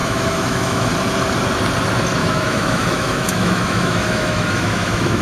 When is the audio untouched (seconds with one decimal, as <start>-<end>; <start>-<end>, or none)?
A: 0.9-2.2

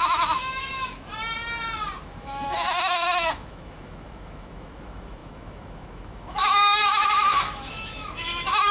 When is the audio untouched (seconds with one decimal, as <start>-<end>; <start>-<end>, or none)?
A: 1.1-2.0

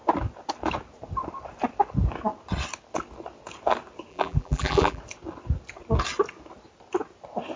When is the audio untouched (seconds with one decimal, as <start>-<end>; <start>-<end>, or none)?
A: 0.0-4.1; 5.0-7.6

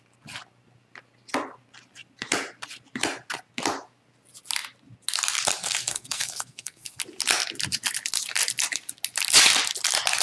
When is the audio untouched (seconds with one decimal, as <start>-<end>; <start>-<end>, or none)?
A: 0.0-5.6; 7.0-10.2

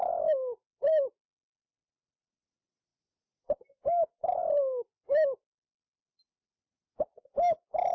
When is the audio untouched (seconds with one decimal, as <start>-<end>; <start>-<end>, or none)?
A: 0.0-7.9

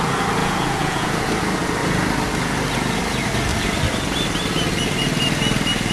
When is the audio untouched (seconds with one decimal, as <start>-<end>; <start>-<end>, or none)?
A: 0.0-0.4; 1.3-5.9